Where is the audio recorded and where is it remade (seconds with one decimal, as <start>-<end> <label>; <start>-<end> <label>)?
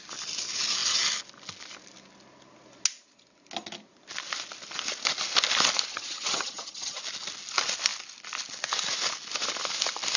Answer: 0.0-5.9 recorded; 5.9-7.0 remade; 7.0-10.2 recorded